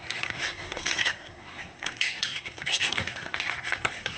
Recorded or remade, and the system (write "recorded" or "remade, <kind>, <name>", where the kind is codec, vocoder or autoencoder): remade, codec, SNAC